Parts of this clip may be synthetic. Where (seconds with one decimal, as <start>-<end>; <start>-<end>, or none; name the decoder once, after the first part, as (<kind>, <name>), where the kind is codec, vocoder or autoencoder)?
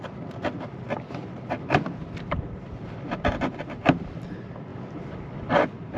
4.7-5.5 (vocoder, BigVGAN v2)